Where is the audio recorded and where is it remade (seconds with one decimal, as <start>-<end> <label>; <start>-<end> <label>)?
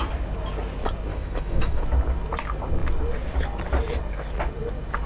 0.0-1.1 recorded; 1.1-1.8 remade; 1.8-5.1 recorded